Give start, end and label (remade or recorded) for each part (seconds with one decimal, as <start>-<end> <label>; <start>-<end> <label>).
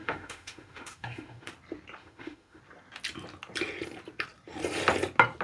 0.0-1.5 remade; 1.5-2.0 recorded; 2.0-2.6 remade; 2.6-5.4 recorded